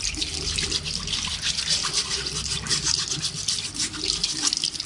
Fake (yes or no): no